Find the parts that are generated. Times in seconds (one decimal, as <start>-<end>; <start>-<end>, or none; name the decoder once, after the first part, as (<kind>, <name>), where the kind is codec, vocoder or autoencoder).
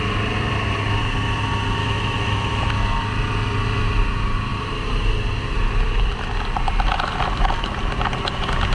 1.8-2.7 (autoencoder, DAC-VAE)